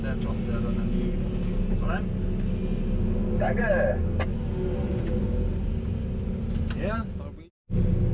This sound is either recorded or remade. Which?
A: recorded